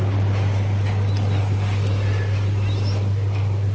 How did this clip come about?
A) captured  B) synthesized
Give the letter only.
A